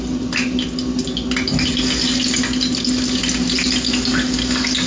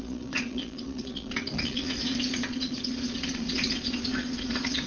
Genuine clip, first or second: first